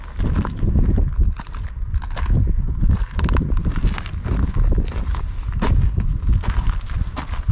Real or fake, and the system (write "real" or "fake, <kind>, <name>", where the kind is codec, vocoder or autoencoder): real